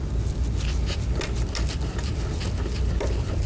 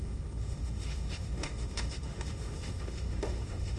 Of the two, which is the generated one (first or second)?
second